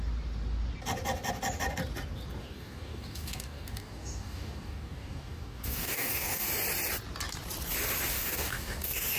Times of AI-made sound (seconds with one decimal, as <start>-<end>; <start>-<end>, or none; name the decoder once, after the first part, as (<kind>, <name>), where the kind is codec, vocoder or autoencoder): 2.4-6.5 (codec, DAC); 8.1-9.2